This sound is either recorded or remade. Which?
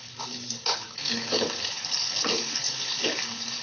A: remade